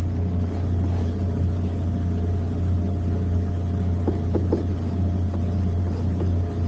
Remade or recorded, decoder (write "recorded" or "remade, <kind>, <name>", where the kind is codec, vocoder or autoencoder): recorded